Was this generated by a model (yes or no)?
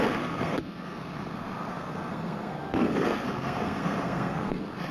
yes